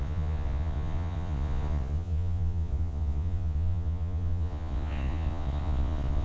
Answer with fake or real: fake